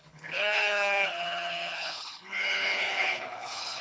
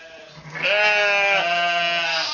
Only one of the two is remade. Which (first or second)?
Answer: first